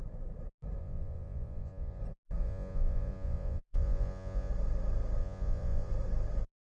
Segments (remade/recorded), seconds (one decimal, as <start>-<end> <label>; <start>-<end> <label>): 0.0-0.8 recorded; 0.8-2.0 remade; 2.0-2.4 recorded; 2.4-4.5 remade; 4.5-5.2 recorded; 5.2-5.9 remade; 5.9-6.6 recorded